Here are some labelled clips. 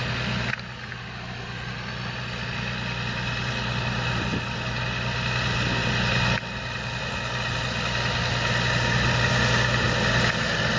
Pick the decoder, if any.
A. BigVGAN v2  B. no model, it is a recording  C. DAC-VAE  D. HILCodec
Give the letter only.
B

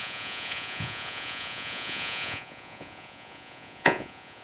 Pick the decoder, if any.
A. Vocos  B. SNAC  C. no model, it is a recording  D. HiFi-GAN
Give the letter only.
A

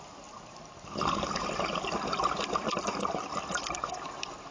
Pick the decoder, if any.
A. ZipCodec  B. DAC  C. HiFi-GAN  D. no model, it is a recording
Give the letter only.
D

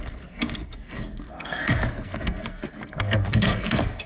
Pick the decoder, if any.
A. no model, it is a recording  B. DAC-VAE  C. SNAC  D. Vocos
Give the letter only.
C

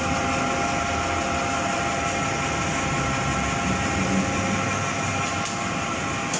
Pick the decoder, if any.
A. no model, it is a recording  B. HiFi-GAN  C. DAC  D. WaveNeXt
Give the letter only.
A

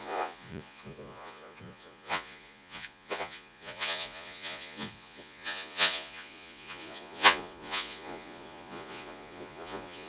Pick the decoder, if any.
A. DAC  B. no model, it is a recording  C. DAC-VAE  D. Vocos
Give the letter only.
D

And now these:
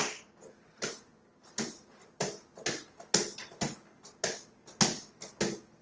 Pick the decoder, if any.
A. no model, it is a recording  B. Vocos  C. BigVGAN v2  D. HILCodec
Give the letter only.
A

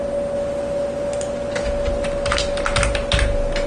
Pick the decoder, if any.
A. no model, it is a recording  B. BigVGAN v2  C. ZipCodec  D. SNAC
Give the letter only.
A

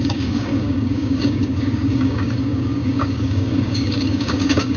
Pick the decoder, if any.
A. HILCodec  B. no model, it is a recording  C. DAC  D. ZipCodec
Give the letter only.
C